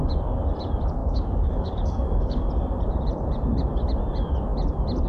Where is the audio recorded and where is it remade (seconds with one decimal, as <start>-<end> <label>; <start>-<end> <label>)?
0.0-1.0 recorded; 1.0-2.5 remade; 2.5-5.1 recorded